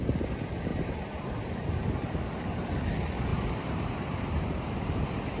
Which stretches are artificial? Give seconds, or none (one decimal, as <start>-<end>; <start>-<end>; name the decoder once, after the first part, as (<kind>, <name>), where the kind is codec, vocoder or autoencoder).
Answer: 0.7-1.8 (vocoder, BigVGAN v2); 3.3-4.8